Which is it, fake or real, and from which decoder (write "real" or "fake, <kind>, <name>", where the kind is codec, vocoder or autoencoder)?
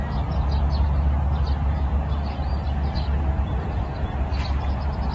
real